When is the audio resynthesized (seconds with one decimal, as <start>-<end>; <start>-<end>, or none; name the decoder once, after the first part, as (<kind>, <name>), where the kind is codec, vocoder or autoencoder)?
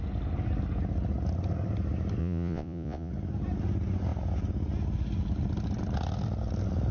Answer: 2.2-3.1 (vocoder, Vocos)